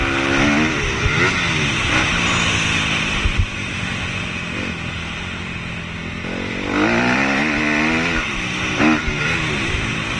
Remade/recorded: recorded